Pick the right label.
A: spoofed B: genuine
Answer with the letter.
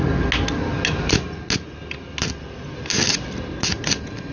B